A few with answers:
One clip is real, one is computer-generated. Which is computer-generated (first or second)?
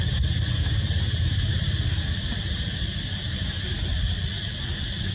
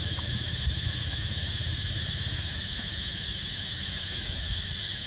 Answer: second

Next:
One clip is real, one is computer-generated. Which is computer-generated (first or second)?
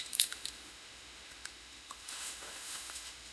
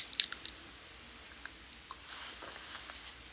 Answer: first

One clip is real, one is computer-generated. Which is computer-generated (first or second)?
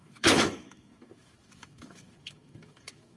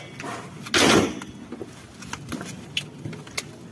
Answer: first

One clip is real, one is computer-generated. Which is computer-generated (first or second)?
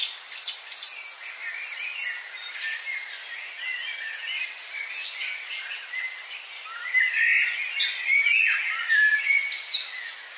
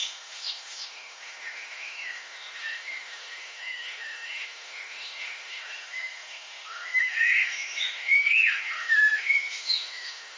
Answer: second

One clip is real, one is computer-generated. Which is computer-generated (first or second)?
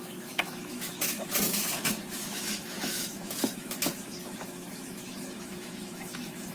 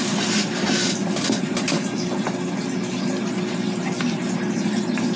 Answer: first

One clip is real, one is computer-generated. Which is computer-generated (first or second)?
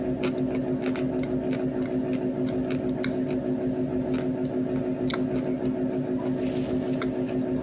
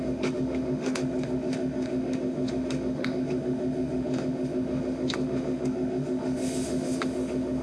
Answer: second